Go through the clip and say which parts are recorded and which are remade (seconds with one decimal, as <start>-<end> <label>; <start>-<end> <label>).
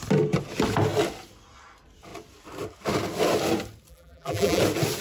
0.0-3.9 recorded; 3.9-4.6 remade; 4.6-5.0 recorded